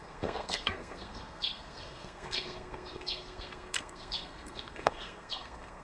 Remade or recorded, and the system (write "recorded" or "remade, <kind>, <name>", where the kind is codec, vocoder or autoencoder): remade, codec, SNAC